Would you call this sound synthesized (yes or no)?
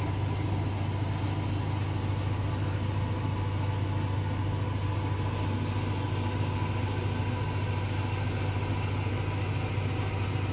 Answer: no